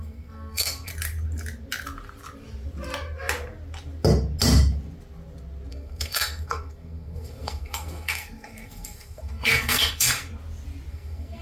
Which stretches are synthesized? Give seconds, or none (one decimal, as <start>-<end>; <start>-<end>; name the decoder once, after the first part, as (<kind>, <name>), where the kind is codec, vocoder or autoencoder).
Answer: 0.0-0.9 (codec, SNAC); 5.7-10.3; 10.9-11.4